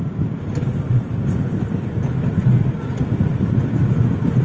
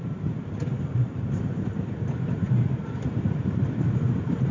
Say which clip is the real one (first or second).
first